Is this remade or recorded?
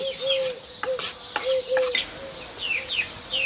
recorded